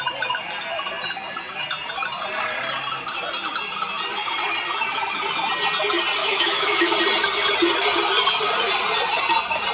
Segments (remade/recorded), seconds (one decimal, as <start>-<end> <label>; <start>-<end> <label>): 0.0-6.2 recorded; 6.2-6.9 remade; 6.9-9.7 recorded